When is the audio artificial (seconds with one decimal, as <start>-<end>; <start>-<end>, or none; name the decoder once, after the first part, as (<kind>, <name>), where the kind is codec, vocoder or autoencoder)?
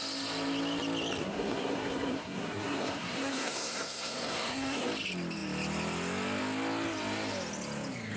1.2-4.9 (codec, SNAC)